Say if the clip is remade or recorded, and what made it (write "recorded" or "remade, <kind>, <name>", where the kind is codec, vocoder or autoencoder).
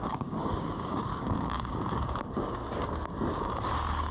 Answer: remade, codec, DAC